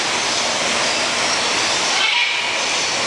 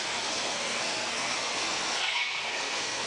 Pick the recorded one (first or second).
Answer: first